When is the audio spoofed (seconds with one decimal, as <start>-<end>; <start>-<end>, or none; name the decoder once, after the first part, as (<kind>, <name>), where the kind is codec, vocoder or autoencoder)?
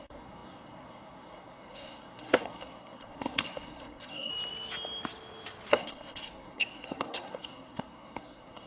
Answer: 0.0-4.3 (codec, SNAC); 5.7-8.7